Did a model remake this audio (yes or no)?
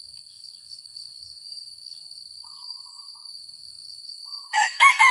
yes